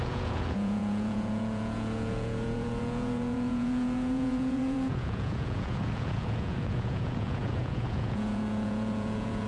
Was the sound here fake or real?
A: fake